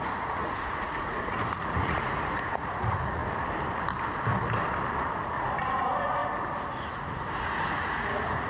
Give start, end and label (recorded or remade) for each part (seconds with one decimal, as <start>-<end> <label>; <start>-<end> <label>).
0.0-3.2 remade; 3.2-5.2 recorded; 5.2-6.2 remade; 6.2-6.7 recorded; 6.7-8.5 remade